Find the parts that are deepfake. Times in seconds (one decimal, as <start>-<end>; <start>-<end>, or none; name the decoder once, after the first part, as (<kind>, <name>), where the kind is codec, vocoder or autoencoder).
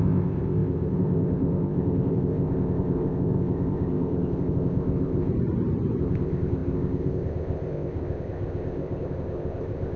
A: 0.0-5.3 (codec, ZipCodec); 6.0-10.0